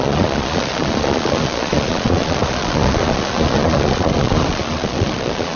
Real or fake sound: fake